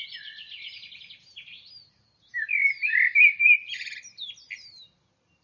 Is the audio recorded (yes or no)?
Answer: yes